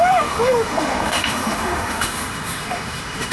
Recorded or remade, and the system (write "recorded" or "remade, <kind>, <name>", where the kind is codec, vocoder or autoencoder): remade, autoencoder, DAC-VAE